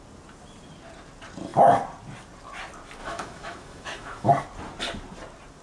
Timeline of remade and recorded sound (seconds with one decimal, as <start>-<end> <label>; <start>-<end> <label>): 0.0-3.0 recorded; 3.0-4.3 remade; 4.3-5.6 recorded